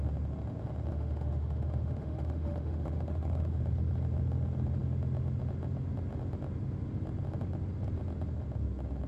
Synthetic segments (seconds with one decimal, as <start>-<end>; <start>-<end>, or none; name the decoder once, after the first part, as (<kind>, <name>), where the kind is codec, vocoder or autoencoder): 0.9-3.6 (autoencoder, DAC-VAE)